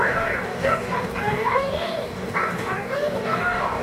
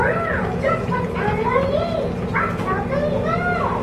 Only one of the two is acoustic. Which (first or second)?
second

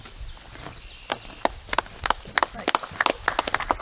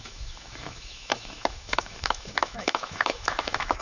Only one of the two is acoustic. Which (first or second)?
first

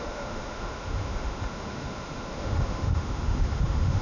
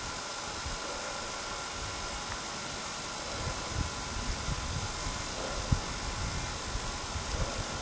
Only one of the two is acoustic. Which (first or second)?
second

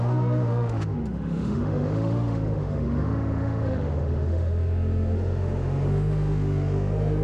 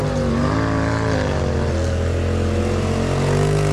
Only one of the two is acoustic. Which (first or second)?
second